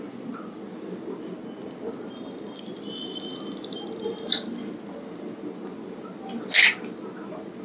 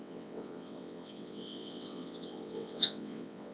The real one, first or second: first